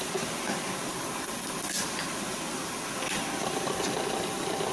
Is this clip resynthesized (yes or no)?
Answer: no